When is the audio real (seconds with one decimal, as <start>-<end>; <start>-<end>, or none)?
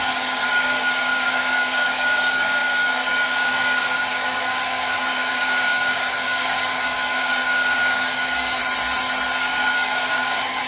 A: 8.6-9.4